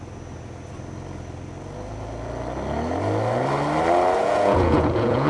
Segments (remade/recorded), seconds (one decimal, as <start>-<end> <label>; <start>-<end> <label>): 0.0-4.2 recorded; 4.2-5.3 remade